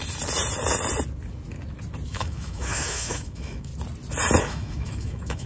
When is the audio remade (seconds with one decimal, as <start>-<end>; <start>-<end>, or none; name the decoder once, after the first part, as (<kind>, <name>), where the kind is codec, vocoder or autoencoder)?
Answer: 2.1-3.7 (autoencoder, DAC-VAE); 4.4-5.5